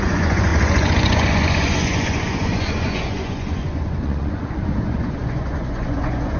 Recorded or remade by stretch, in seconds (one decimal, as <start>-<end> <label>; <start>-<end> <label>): 0.0-6.4 remade